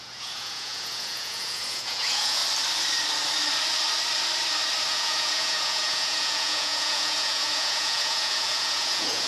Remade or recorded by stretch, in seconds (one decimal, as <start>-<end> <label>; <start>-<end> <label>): 0.0-2.4 remade; 2.4-4.9 recorded; 4.9-9.3 remade